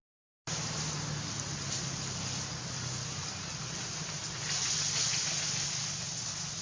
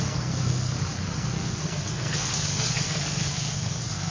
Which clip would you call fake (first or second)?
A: second